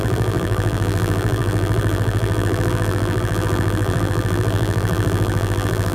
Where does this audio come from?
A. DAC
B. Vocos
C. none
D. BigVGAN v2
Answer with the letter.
D